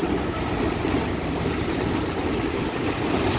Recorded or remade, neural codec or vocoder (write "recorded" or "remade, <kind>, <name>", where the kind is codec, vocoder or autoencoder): recorded